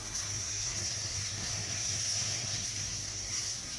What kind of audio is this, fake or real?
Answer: fake